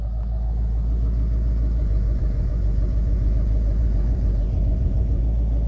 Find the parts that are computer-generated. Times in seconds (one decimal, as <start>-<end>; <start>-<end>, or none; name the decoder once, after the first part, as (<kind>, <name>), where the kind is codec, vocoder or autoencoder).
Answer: 1.8-5.2 (vocoder, Vocos)